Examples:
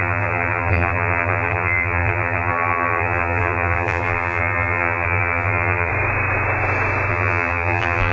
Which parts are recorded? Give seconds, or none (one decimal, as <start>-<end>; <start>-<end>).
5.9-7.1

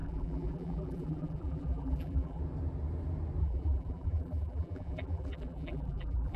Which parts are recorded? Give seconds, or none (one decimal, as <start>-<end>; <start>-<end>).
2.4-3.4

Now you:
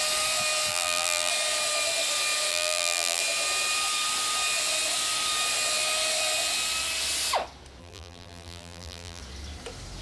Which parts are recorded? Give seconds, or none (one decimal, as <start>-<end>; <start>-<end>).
0.0-0.7; 1.3-2.5; 3.2-7.8; 9.2-10.0

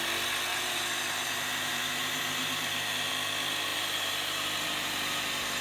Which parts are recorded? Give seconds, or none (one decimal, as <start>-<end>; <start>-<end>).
0.0-0.5; 3.1-3.7

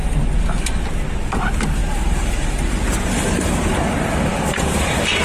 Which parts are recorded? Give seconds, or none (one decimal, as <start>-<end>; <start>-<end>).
0.0-1.8

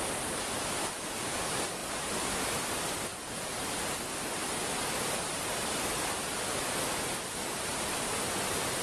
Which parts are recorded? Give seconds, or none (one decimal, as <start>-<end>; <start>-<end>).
none

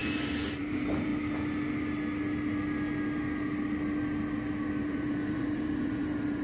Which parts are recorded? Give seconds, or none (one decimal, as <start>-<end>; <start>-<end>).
1.1-4.8

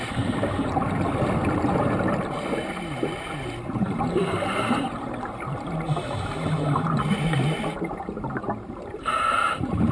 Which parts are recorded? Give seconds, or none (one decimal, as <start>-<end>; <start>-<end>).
0.8-1.6